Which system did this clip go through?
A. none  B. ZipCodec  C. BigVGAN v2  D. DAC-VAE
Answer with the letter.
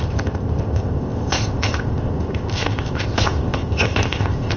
B